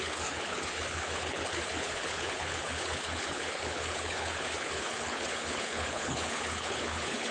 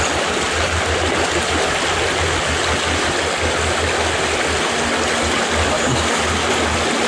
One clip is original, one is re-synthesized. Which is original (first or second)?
second